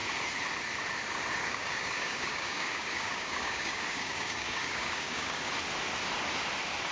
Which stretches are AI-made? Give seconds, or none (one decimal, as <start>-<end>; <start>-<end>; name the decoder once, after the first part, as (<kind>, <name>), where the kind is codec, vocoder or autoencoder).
1.4-5.5 (codec, DAC)